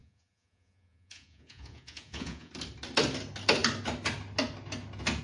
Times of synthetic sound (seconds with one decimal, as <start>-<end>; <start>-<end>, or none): 0.0-2.5